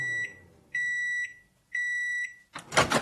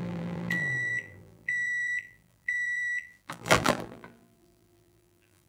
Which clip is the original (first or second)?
first